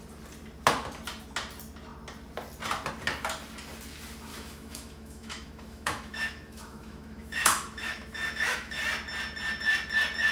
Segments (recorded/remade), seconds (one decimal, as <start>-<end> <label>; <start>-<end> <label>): 0.0-4.3 recorded; 4.3-8.8 remade; 8.8-10.3 recorded